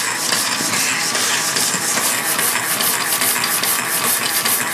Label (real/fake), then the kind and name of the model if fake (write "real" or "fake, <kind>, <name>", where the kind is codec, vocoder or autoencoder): real